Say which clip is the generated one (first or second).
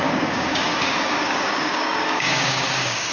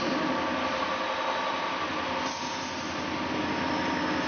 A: first